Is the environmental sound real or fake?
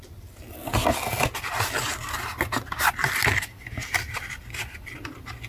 real